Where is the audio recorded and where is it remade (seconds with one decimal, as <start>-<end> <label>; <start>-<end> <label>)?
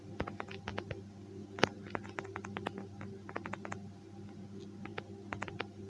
0.0-5.9 recorded